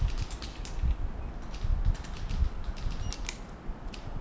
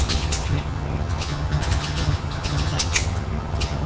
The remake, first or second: second